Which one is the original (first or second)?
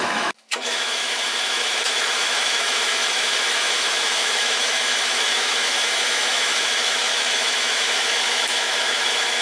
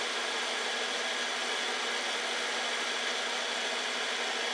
second